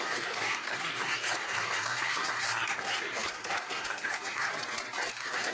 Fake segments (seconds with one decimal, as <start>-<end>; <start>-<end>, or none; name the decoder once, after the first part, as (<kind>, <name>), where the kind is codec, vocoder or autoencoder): 0.0-4.5 (codec, SNAC); 5.1-5.5